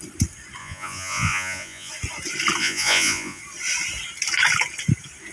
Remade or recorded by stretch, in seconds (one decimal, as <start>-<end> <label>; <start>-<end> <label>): 0.0-0.6 recorded; 0.6-1.9 remade; 1.9-2.6 recorded; 2.6-3.4 remade; 3.4-5.3 recorded